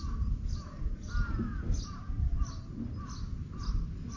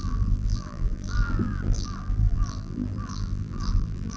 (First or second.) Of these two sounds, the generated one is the second